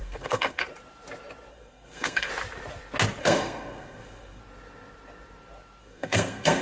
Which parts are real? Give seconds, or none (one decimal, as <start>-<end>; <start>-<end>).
0.6-1.5; 2.3-3.2; 4.4-5.8